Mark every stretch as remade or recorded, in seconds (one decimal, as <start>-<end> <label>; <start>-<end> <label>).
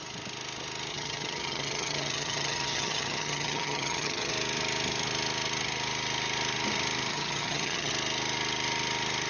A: 0.0-0.9 recorded; 0.9-4.3 remade; 4.3-7.1 recorded; 7.1-7.9 remade; 7.9-9.3 recorded